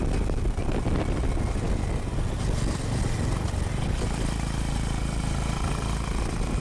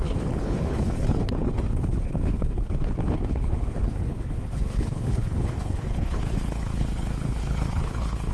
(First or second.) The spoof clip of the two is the second